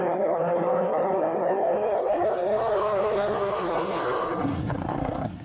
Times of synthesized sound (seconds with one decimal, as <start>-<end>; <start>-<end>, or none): 0.0-5.4